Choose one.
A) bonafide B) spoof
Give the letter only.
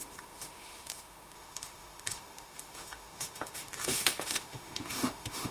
B